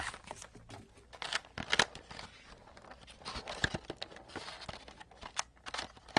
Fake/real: real